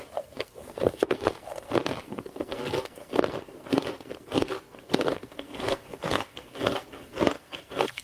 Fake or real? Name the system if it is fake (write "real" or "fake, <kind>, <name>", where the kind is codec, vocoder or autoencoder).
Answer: fake, codec, SNAC